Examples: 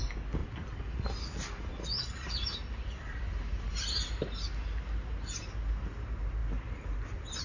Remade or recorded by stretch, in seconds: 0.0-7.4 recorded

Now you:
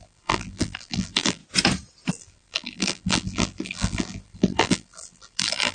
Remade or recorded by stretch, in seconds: 0.0-1.4 remade; 1.4-2.1 recorded; 2.1-5.7 remade

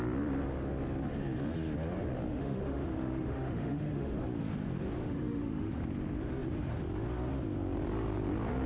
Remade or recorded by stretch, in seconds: 0.0-2.3 recorded; 2.3-4.2 remade; 4.2-5.0 recorded; 5.0-5.7 remade; 5.7-8.7 recorded